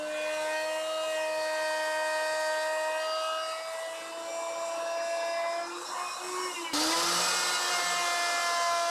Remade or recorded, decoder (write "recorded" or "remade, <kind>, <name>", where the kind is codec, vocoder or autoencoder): recorded